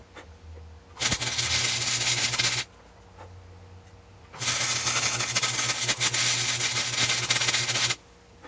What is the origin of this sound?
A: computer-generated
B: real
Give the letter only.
B